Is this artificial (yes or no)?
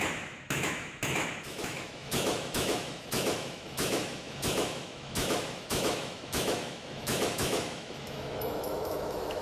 yes